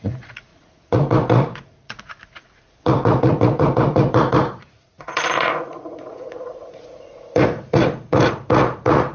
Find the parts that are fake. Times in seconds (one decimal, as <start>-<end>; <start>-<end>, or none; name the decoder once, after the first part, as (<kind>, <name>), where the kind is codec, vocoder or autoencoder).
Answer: 0.0-9.1 (vocoder, Vocos)